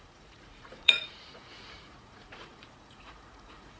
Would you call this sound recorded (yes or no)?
no